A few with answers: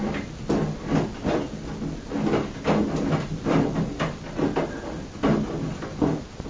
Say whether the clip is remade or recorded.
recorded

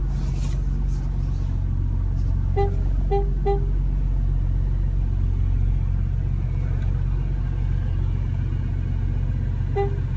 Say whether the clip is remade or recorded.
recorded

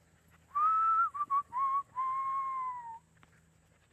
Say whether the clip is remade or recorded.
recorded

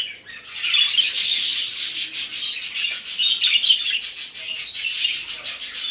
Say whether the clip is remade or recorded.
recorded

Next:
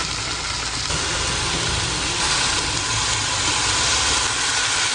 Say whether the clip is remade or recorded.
recorded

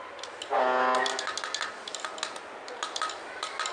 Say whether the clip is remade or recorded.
recorded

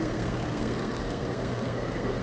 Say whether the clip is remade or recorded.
remade